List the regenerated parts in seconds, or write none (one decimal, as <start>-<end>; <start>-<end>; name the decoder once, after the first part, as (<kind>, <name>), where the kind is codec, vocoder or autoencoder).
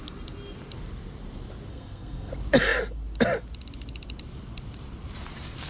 1.7-2.3 (codec, SNAC)